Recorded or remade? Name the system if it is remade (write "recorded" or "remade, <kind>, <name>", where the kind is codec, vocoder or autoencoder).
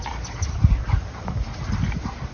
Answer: recorded